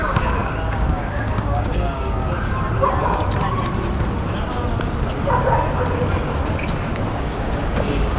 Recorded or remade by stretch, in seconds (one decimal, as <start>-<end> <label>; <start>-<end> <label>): 0.0-2.2 remade; 2.2-7.1 recorded; 7.1-8.2 remade